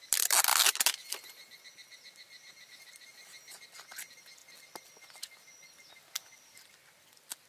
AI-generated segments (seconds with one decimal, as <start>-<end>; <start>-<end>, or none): none